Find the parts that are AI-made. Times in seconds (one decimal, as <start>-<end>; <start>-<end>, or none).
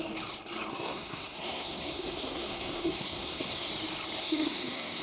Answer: 0.7-3.7; 4.2-5.0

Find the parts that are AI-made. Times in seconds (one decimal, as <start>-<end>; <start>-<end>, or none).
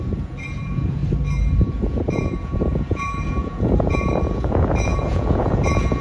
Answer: 0.0-1.0; 1.6-6.0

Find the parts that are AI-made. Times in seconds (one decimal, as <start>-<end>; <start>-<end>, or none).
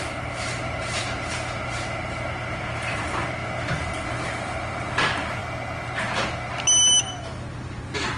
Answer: 0.0-3.4; 4.1-5.4; 7.3-8.2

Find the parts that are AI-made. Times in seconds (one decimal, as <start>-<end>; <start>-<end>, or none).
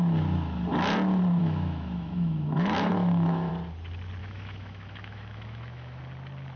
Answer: 1.4-3.5; 4.2-6.0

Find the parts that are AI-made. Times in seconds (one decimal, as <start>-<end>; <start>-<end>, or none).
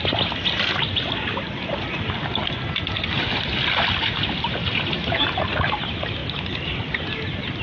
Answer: none